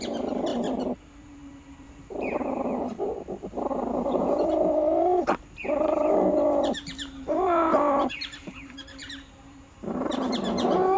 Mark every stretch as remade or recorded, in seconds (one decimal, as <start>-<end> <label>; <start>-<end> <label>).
0.0-0.5 remade; 0.5-1.0 recorded; 1.0-11.0 remade